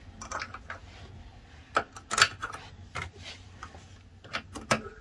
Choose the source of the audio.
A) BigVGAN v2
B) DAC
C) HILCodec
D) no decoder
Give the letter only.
D